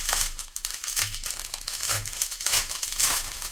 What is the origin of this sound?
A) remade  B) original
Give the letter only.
A